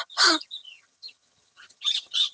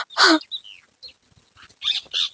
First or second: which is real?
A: second